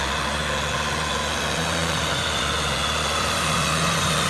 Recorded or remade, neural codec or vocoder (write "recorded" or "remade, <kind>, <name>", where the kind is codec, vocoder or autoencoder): remade, vocoder, Vocos